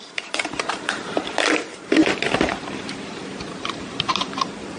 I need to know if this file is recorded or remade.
remade